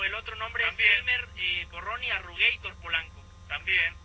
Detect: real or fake real